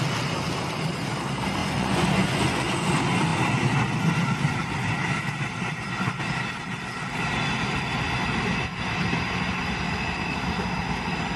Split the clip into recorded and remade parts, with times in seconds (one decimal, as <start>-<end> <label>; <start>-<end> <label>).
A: 0.0-1.6 recorded; 1.6-2.9 remade; 2.9-11.4 recorded